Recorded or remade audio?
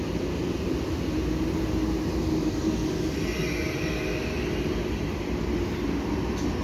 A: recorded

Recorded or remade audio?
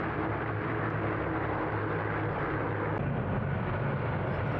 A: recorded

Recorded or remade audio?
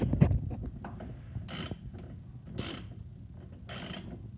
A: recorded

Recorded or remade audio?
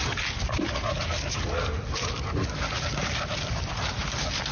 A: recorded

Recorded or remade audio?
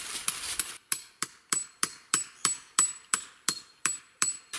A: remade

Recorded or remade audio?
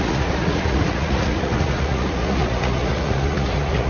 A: remade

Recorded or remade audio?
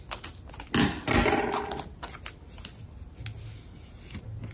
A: recorded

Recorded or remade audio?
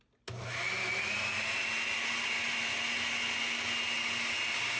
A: recorded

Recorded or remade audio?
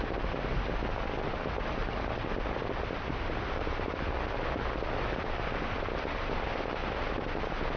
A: recorded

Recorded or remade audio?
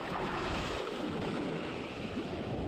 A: remade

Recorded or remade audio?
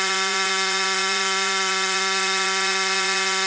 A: remade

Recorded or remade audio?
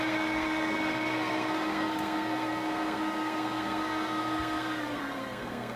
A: remade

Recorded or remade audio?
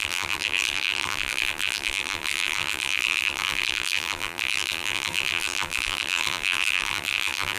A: remade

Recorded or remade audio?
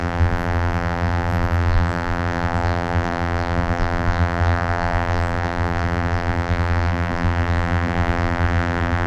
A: remade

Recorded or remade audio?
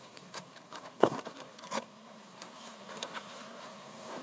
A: remade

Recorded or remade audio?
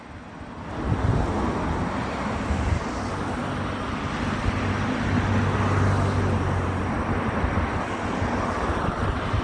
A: recorded